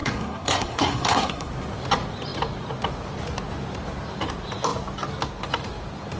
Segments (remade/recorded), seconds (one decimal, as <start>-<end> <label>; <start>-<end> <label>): 0.0-1.5 remade; 1.5-6.2 recorded